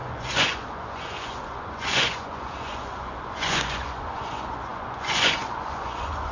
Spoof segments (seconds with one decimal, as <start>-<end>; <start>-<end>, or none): 0.0-6.3